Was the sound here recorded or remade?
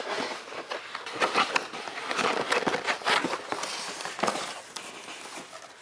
recorded